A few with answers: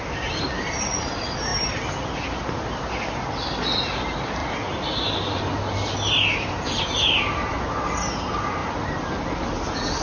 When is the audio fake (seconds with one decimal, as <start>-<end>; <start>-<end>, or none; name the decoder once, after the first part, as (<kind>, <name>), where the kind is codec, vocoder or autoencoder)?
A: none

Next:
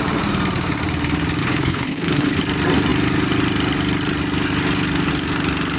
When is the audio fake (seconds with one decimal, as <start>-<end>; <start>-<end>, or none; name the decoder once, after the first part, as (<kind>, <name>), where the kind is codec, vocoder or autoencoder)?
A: 1.4-2.4 (codec, HILCodec)

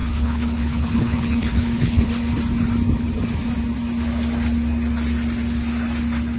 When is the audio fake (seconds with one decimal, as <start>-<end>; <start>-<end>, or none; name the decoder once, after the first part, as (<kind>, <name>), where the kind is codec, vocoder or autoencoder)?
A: 0.0-2.1 (codec, HILCodec)

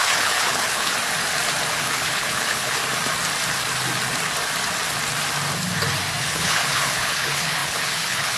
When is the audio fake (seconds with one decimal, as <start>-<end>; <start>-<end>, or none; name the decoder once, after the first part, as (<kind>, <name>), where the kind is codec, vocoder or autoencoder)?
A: 0.0-0.9 (codec, HILCodec); 1.7-2.8; 6.2-8.4